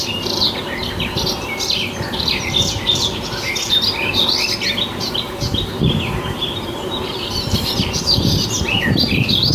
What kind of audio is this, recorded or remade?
remade